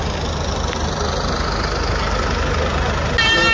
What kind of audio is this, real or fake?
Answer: real